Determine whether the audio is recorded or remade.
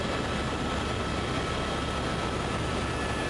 recorded